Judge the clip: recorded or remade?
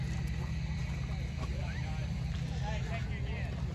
recorded